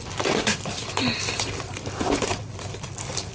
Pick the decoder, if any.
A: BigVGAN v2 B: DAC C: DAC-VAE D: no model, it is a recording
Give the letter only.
A